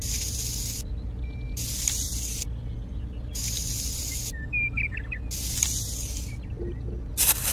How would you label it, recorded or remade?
recorded